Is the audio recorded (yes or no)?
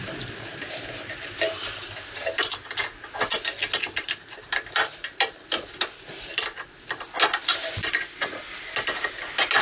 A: yes